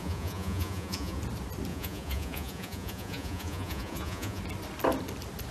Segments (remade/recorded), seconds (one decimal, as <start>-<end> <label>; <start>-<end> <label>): 0.0-1.2 remade; 1.2-1.7 recorded; 1.7-4.4 remade; 4.4-5.5 recorded

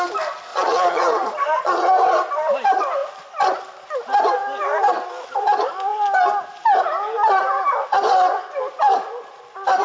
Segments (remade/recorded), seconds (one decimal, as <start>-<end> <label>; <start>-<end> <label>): 0.0-0.5 recorded; 0.5-1.9 remade; 1.9-9.8 recorded

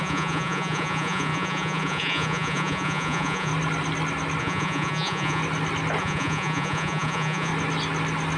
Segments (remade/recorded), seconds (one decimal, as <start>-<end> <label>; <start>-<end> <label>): 0.0-3.5 remade; 3.5-4.4 recorded; 4.4-5.4 remade; 5.4-6.0 recorded; 6.0-7.5 remade; 7.5-8.4 recorded

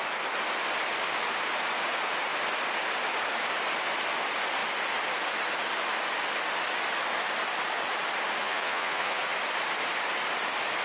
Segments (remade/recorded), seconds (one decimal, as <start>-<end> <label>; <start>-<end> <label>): 0.0-8.4 recorded; 8.4-9.2 remade; 9.2-10.8 recorded

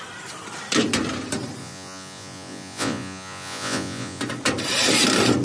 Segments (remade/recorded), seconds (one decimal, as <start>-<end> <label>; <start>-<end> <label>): 0.0-1.6 recorded; 1.6-4.2 remade; 4.2-5.4 recorded

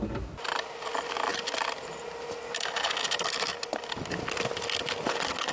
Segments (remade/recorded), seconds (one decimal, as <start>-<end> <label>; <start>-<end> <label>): 0.0-5.5 recorded

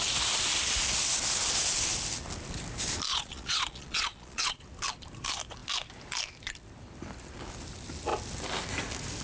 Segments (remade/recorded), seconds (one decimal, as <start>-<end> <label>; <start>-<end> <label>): 0.0-3.1 recorded; 3.1-4.6 remade; 4.6-9.2 recorded

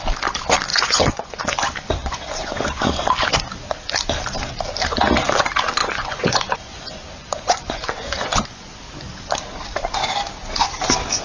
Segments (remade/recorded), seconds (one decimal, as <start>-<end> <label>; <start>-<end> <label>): 0.0-0.7 recorded; 0.7-1.4 remade; 1.4-1.8 recorded; 1.8-2.9 remade; 2.9-5.8 recorded; 5.8-8.8 remade; 8.8-11.2 recorded